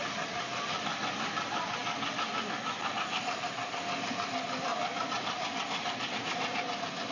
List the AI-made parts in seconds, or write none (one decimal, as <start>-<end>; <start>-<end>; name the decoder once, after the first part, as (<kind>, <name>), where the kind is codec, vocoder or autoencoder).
4.7-6.1 (vocoder, BigVGAN v2)